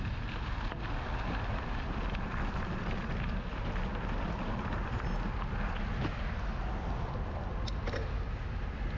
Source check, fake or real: real